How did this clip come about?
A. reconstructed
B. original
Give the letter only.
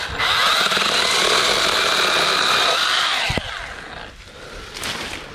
B